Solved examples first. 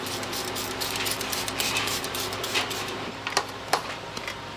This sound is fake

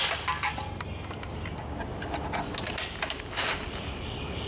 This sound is real